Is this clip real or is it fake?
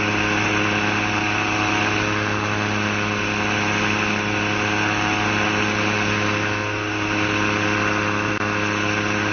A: real